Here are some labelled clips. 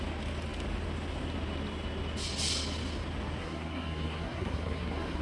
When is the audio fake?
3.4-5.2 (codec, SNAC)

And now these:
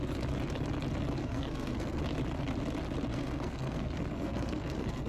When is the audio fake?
1.2-2.0 (codec, SNAC); 3.1-5.1

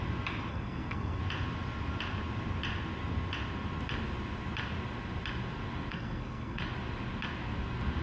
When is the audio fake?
0.5-1.2 (codec, SNAC); 5.9-6.6

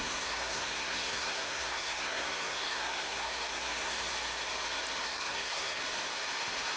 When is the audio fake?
0.0-4.1 (codec, SNAC); 5.0-5.8

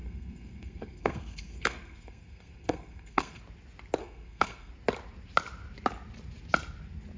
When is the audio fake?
0.0-3.4 (codec, SNAC); 4.0-4.7

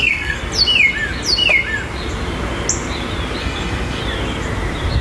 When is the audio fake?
0.0-0.4 (codec, SNAC); 3.4-4.0